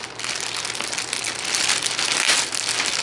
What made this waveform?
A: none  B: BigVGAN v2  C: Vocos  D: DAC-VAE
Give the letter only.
A